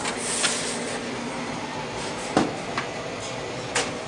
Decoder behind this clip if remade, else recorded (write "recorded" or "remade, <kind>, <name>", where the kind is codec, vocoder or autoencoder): recorded